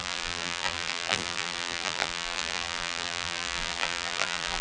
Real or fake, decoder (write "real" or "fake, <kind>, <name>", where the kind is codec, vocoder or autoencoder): fake, vocoder, BigVGAN v2